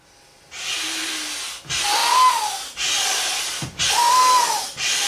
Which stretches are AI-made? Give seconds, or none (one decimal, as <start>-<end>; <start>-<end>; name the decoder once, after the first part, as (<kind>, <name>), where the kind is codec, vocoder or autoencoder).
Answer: none